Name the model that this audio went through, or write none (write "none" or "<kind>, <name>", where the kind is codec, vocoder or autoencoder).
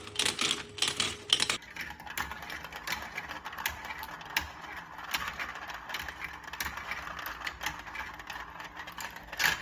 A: none